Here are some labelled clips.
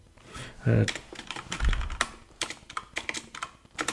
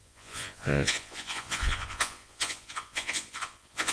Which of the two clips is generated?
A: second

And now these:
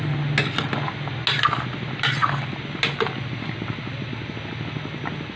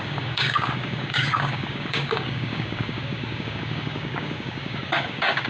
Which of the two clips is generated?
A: second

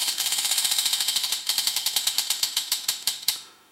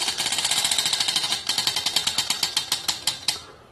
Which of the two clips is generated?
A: first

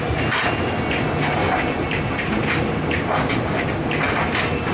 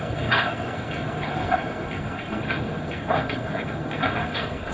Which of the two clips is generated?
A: second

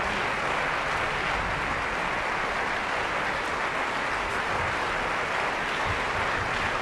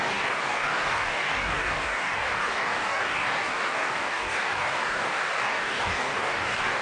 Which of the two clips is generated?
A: second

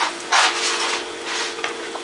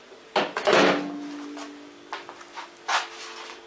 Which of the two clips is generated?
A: first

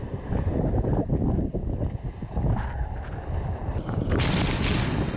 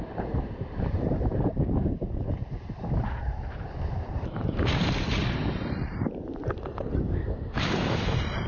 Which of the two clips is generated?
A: second